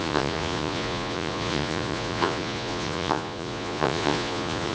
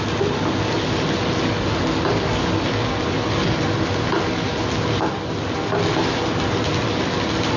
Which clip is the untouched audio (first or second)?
second